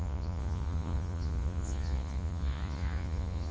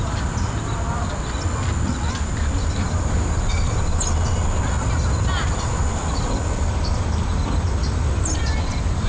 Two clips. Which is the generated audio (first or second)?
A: first